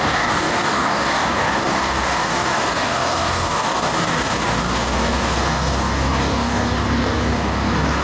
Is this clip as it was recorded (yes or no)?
no